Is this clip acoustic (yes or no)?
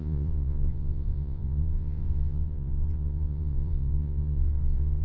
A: no